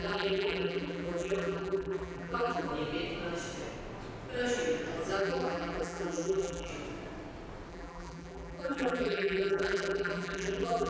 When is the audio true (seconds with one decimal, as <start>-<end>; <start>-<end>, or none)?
2.7-5.2; 6.7-7.7